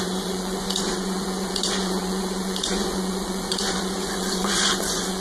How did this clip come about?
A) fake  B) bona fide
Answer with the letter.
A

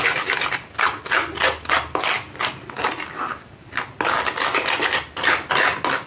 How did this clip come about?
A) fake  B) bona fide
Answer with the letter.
B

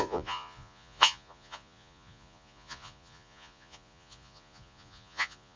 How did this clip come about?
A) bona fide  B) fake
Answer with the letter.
B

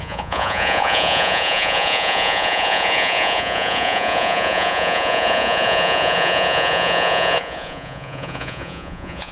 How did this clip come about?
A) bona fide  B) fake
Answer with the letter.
B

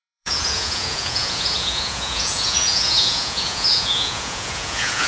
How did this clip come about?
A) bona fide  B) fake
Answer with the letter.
B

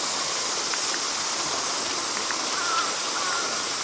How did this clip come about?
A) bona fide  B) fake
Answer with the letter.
A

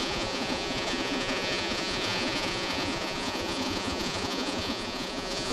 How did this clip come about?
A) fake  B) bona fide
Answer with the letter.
A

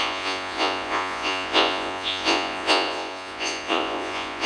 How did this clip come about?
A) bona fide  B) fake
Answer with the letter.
B